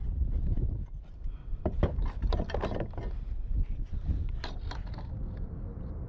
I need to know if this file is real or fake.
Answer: real